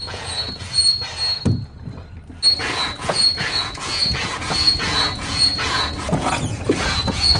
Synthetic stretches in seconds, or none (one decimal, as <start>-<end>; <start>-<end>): 0.0-1.0; 2.6-7.4